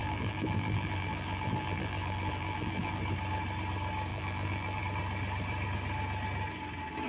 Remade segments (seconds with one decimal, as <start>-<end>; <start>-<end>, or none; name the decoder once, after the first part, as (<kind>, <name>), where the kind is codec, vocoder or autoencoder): 0.0-3.0 (vocoder, BigVGAN v2); 4.1-4.8